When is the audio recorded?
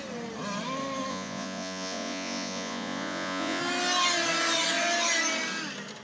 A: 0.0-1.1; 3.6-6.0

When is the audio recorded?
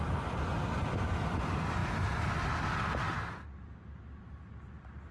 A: 0.0-5.1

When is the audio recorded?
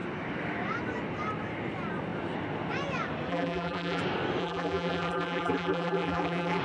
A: 0.0-3.3; 4.0-4.4